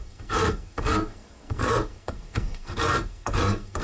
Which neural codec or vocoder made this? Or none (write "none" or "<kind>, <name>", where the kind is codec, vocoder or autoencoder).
codec, SNAC